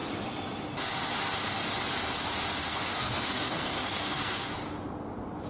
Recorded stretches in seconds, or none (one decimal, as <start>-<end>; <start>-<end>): 0.0-2.6; 4.5-5.5